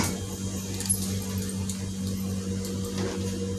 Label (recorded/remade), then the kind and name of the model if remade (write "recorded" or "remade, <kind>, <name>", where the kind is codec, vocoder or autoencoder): recorded